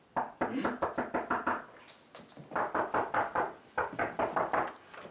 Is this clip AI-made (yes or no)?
no